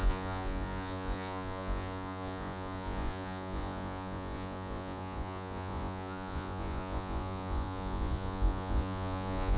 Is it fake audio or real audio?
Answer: fake